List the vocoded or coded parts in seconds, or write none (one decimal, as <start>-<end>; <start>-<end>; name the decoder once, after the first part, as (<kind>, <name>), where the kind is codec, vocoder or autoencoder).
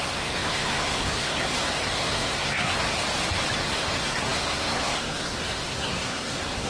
0.0-3.0 (codec, SNAC); 3.6-6.7